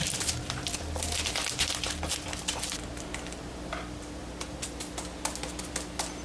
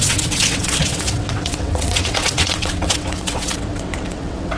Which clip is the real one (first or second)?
first